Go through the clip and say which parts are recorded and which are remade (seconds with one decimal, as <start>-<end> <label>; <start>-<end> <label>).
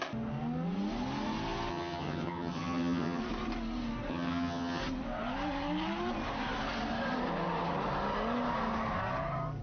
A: 0.0-1.7 recorded; 1.7-3.2 remade; 3.2-4.1 recorded; 4.1-4.8 remade; 4.8-9.6 recorded